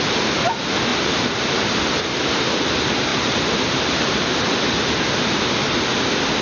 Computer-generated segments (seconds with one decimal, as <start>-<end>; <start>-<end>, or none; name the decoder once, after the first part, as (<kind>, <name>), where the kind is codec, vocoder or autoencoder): 0.9-1.7 (vocoder, BigVGAN v2); 3.1-4.4